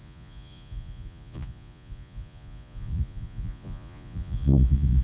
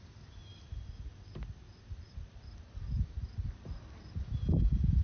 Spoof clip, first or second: first